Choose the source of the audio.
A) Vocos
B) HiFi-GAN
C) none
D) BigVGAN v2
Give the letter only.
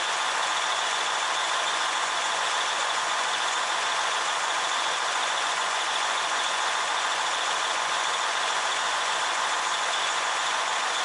A